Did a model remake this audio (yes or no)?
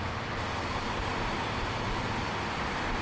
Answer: no